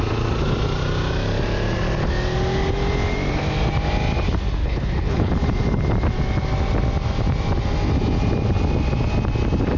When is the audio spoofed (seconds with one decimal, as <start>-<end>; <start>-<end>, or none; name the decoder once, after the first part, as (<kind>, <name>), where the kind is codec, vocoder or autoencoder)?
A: 4.6-5.3 (codec, HILCodec)